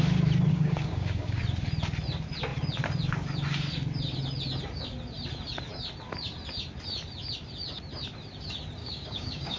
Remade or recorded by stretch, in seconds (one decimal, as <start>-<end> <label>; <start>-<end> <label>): 0.0-0.5 recorded; 0.5-1.4 remade; 1.4-8.8 recorded; 8.8-9.6 remade